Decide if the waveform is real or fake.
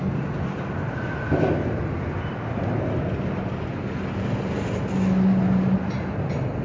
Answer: real